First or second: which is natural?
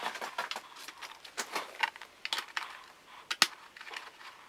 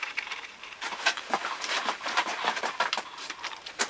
first